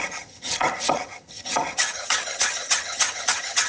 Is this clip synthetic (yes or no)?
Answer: yes